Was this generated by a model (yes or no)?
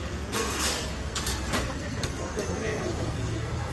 yes